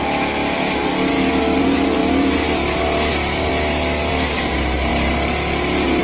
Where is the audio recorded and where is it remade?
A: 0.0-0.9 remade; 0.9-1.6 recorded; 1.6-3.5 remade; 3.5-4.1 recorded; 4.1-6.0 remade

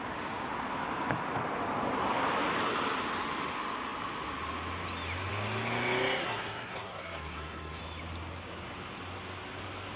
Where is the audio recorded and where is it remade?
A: 0.0-6.2 recorded; 6.2-7.8 remade; 7.8-10.0 recorded

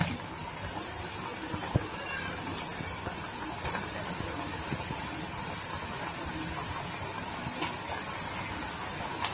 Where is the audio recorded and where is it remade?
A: 0.0-9.3 recorded

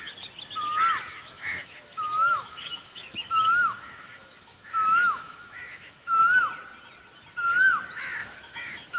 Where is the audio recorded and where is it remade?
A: 0.0-1.1 recorded; 1.1-6.2 remade; 6.2-8.2 recorded; 8.2-9.0 remade

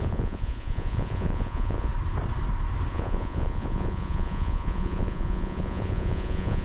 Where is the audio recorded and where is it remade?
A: 0.0-1.9 remade; 1.9-2.9 recorded; 2.9-6.6 remade

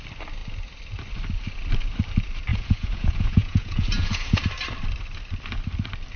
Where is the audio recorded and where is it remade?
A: 0.0-2.5 recorded; 2.5-4.4 remade; 4.4-6.2 recorded

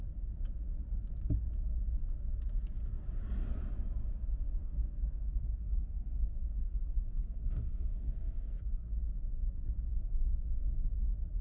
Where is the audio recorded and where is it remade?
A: 0.0-4.6 recorded; 4.6-8.9 remade; 8.9-9.9 recorded; 9.9-10.8 remade; 10.8-11.4 recorded

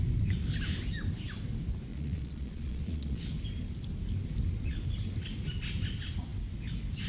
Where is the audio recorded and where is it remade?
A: 0.0-1.9 recorded; 1.9-3.2 remade; 3.2-7.1 recorded